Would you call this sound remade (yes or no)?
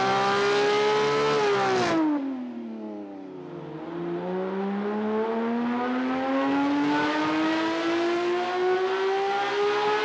no